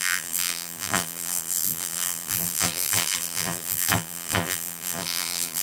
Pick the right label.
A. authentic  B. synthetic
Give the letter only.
B